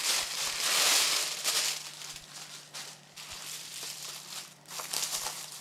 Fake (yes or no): yes